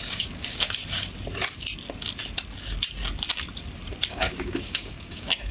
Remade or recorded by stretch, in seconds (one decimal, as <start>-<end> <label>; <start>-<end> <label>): 0.0-0.8 remade; 0.8-4.1 recorded; 4.1-5.5 remade